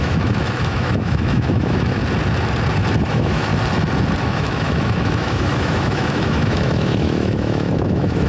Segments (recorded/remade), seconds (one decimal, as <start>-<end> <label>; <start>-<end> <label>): 0.0-2.0 remade; 2.0-3.1 recorded; 3.1-3.5 remade; 3.5-4.2 recorded; 4.2-8.3 remade